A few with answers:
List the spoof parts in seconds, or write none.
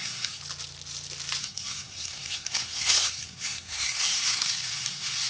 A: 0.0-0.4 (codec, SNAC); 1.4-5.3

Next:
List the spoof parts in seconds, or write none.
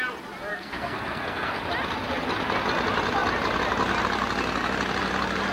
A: 0.5-1.6 (codec, SNAC)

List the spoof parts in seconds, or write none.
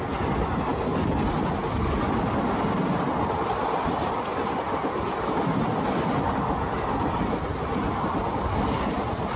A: none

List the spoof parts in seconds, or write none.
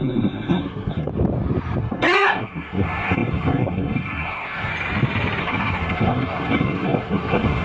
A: 0.0-1.1 (codec, SNAC); 1.8-4.7; 5.4-7.6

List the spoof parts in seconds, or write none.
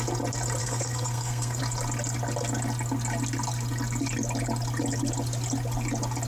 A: 0.6-1.6 (codec, SNAC)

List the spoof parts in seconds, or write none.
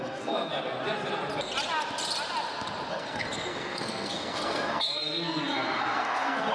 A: 0.0-0.5 (codec, SNAC); 2.9-6.5